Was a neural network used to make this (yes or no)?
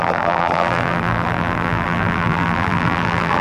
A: yes